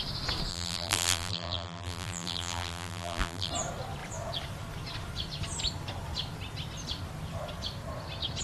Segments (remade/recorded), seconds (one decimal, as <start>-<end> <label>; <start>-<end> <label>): 0.0-0.5 recorded; 0.5-3.5 remade; 3.5-8.4 recorded

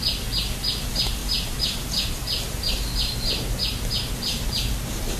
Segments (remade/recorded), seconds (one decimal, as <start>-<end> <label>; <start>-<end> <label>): 0.0-5.2 recorded

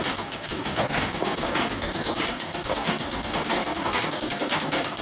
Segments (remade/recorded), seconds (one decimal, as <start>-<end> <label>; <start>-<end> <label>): 0.0-5.0 remade

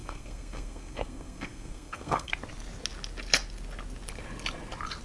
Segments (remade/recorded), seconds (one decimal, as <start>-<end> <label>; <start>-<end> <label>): 0.0-2.3 remade; 2.3-5.0 recorded

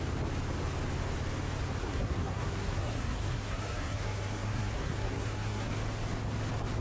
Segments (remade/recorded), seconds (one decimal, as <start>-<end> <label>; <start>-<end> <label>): 0.0-1.8 recorded; 1.8-5.7 remade; 5.7-6.8 recorded

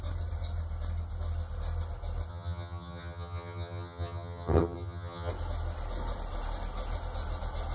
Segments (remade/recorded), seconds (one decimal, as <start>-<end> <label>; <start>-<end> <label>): 0.0-2.3 recorded; 2.3-5.3 remade; 5.3-7.7 recorded